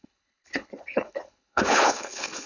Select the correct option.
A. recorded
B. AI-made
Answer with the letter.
B